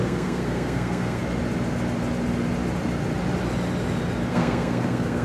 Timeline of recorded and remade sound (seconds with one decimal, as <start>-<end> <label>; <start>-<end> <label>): 0.0-1.2 remade; 1.2-4.3 recorded; 4.3-5.2 remade